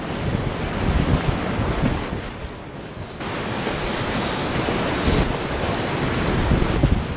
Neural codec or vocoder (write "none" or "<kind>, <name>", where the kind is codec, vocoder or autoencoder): none